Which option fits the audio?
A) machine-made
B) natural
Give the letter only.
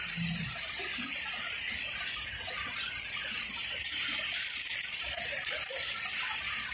B